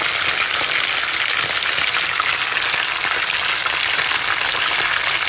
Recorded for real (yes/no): yes